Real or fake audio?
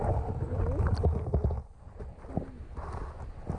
real